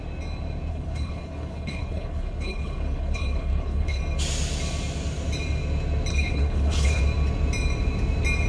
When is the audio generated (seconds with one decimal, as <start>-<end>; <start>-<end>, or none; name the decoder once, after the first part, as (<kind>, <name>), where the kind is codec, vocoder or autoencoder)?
0.7-4.0 (codec, HILCodec); 6.1-7.0